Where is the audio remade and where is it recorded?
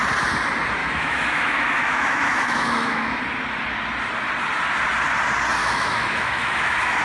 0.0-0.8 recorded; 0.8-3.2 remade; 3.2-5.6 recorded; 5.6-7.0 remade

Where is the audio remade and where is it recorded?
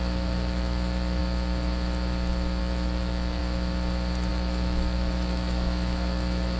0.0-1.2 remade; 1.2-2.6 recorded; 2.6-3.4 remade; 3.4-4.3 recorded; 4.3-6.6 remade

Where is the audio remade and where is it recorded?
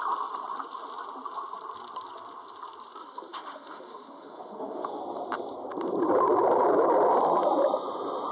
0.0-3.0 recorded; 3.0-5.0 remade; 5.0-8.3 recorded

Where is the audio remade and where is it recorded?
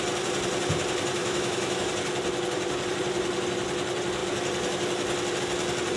0.0-1.2 recorded; 1.2-1.9 remade; 1.9-6.0 recorded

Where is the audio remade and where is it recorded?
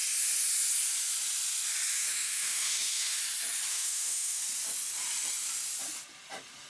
0.0-1.9 recorded; 1.9-3.2 remade; 3.2-3.7 recorded; 3.7-4.4 remade; 4.4-6.7 recorded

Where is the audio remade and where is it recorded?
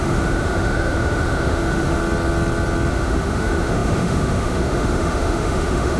0.0-2.0 remade; 2.0-2.9 recorded; 2.9-6.0 remade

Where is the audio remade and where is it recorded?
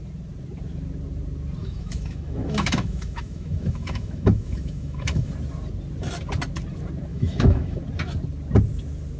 0.0-1.6 recorded; 1.6-5.3 remade; 5.3-7.1 recorded; 7.1-7.8 remade; 7.8-9.2 recorded